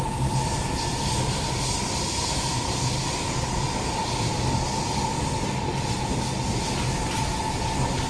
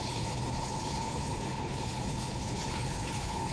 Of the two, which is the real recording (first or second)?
first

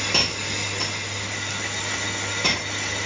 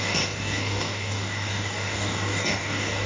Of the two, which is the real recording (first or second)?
first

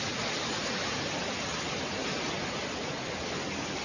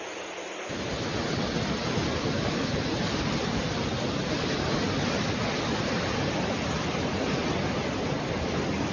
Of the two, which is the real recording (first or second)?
first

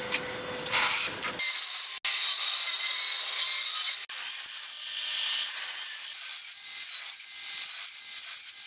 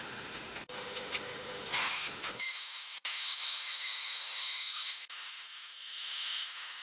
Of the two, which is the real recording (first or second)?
first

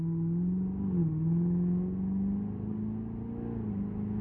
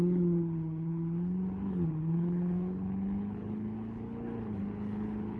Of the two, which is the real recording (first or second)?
first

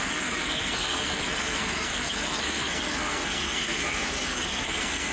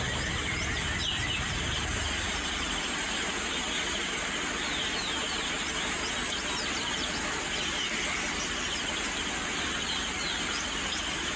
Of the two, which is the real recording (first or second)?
second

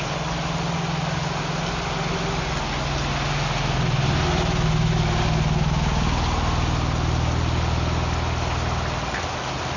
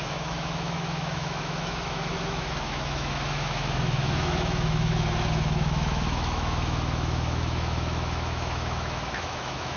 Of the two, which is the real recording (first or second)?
first